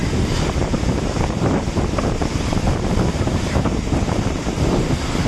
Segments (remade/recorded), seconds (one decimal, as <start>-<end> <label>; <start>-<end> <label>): 0.0-4.4 remade; 4.4-5.3 recorded